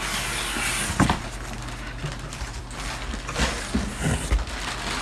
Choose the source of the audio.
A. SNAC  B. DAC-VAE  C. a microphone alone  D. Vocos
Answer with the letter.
C